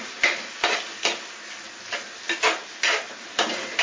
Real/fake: real